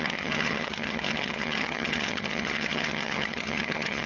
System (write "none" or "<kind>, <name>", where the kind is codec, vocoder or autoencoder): vocoder, HiFi-GAN